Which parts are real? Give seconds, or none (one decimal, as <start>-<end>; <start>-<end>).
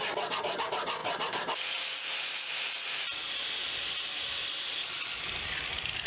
0.0-6.1